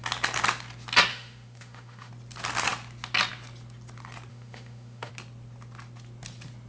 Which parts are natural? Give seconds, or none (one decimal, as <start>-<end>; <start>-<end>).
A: 0.0-1.1; 2.1-4.3; 5.1-6.7